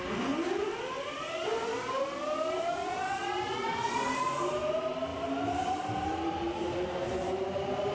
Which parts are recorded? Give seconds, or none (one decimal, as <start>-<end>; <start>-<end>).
0.0-7.9

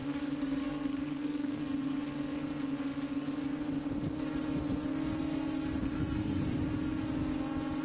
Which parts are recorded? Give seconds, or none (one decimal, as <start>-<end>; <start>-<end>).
1.6-5.8; 6.4-7.8

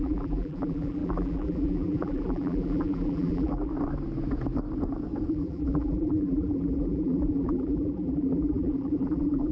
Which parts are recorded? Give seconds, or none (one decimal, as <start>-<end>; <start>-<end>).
3.7-5.3

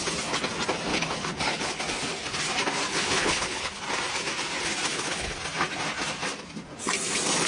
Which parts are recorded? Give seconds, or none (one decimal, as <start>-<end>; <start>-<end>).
0.0-0.9; 1.8-2.9; 3.8-4.9; 5.4-7.5

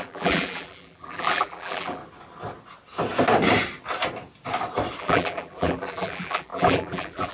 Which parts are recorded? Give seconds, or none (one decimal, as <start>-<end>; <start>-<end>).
2.0-5.0

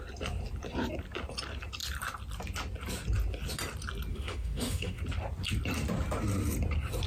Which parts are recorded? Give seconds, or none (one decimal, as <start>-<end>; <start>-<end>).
0.0-4.1; 5.0-7.1

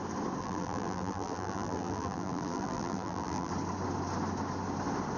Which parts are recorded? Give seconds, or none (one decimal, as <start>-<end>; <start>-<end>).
0.0-0.4; 3.5-5.2